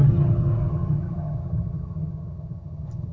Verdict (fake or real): fake